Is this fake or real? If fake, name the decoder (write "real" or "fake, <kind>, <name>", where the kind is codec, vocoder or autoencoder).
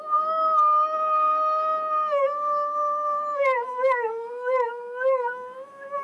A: fake, autoencoder, DAC-VAE